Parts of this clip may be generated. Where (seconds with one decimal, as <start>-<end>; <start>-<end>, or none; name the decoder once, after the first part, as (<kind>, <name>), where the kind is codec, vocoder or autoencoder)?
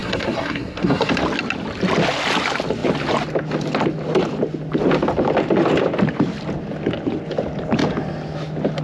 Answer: 0.0-1.1 (codec, SNAC)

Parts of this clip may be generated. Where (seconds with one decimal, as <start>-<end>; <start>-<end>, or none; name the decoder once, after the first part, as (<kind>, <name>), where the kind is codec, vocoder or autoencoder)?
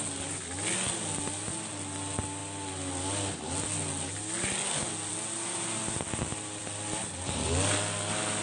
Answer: none